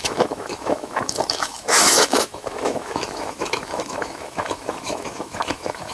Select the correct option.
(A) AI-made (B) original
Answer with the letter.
A